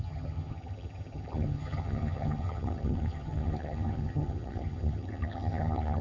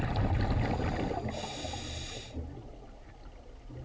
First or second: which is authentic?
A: second